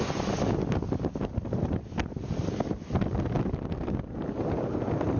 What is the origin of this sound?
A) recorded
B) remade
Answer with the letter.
A